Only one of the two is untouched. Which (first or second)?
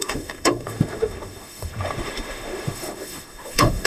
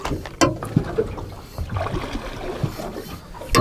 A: second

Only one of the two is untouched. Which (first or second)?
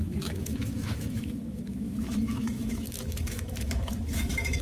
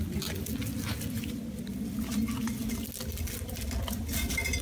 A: second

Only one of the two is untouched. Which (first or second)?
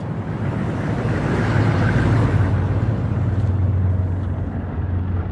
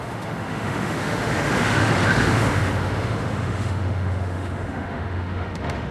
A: first